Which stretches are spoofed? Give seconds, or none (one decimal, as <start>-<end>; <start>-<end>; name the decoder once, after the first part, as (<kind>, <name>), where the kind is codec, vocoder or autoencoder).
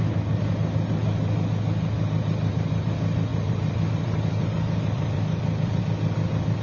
3.3-5.8 (vocoder, BigVGAN v2)